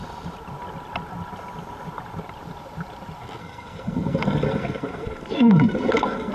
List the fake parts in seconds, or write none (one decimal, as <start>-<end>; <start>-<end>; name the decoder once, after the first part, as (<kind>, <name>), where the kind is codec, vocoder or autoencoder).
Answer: 3.4-6.3 (codec, SNAC)